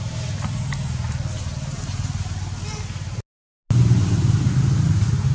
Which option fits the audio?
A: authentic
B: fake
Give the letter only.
A